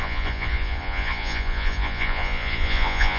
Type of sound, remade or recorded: remade